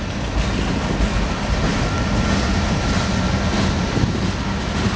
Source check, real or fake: real